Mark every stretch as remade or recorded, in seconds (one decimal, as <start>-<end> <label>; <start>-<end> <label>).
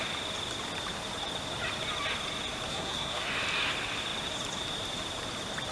0.0-2.7 recorded; 2.7-3.3 remade; 3.3-5.7 recorded